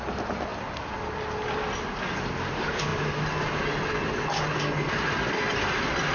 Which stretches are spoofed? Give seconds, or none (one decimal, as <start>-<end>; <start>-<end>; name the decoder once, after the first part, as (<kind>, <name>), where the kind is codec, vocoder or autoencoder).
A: none